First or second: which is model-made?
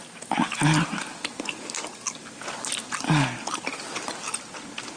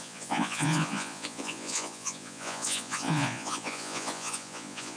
second